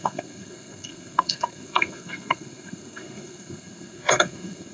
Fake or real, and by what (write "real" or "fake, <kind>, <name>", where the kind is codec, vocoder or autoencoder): fake, codec, SNAC